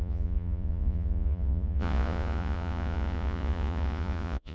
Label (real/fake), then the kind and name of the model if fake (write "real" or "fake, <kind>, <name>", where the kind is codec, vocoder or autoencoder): fake, vocoder, Vocos